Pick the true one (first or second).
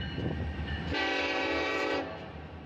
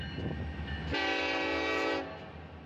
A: second